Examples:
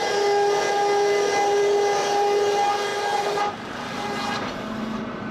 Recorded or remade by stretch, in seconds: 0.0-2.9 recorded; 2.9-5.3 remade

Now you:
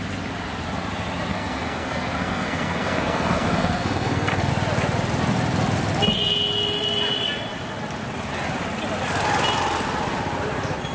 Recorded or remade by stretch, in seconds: 0.0-1.3 recorded; 1.3-4.5 remade; 4.5-10.9 recorded